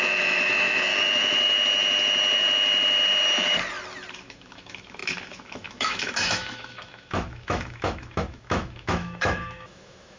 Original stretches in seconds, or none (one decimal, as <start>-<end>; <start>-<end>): 0.9-4.1